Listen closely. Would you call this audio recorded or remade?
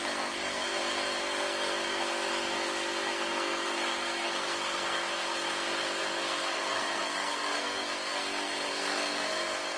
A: remade